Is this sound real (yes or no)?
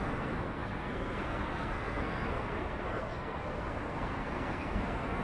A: no